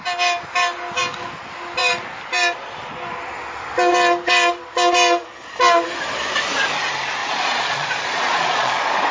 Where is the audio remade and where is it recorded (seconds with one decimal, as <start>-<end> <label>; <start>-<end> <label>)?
0.0-7.2 recorded; 7.2-8.7 remade; 8.7-9.1 recorded

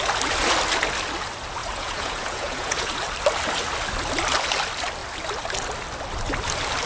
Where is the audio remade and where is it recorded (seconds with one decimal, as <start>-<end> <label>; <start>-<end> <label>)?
0.0-1.6 recorded; 1.6-2.9 remade; 2.9-6.9 recorded

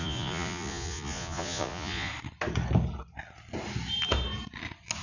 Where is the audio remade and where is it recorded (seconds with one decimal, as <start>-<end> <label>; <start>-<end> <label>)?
0.0-2.1 remade; 2.1-5.0 recorded

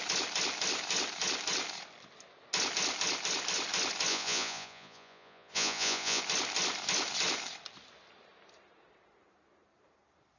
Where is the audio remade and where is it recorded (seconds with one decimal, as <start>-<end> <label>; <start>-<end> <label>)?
0.0-4.1 recorded; 4.1-6.2 remade; 6.2-10.4 recorded

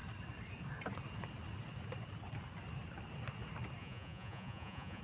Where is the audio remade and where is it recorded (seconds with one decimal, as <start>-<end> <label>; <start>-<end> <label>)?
0.0-3.8 recorded; 3.8-5.0 remade